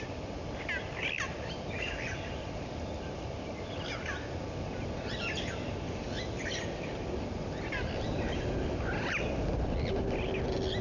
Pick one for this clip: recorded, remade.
recorded